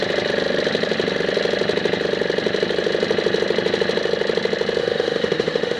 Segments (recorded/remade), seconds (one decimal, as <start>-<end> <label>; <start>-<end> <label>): 0.0-4.8 recorded; 4.8-5.8 remade